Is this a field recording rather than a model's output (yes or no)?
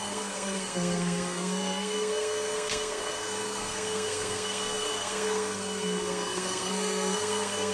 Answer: no